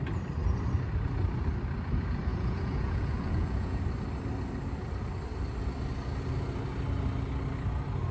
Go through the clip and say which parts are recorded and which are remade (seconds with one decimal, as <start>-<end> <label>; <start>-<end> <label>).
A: 0.0-2.3 recorded; 2.3-3.8 remade; 3.8-8.1 recorded

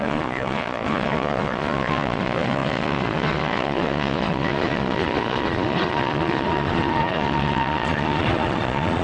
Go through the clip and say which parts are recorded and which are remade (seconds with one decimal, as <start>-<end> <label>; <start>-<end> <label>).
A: 0.0-9.0 remade